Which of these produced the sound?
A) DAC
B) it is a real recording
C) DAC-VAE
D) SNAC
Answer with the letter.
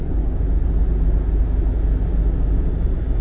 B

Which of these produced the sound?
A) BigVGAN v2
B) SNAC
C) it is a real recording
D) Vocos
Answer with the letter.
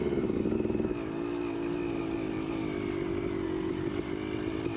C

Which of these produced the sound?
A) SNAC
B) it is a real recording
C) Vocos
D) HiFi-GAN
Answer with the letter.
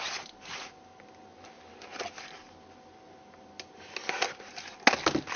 B